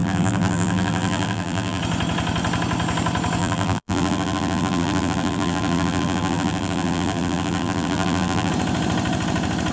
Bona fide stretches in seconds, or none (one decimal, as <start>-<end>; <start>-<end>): 1.8-3.4; 8.5-9.7